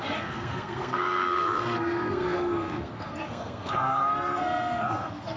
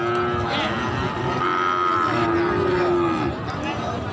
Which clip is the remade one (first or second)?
first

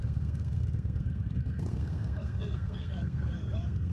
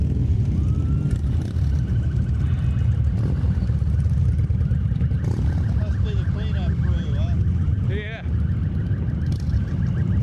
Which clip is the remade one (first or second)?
first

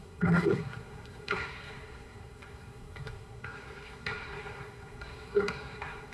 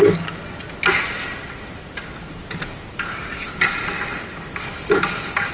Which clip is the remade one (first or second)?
first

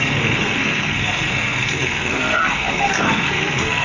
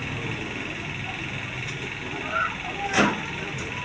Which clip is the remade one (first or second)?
first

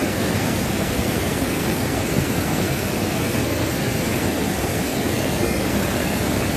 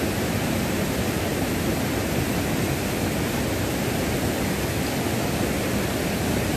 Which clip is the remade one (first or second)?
first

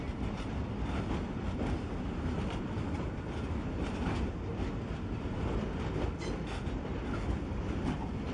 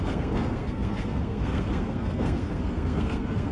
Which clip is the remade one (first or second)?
second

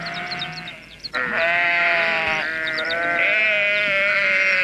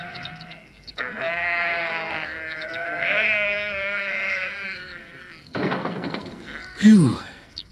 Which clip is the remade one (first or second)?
second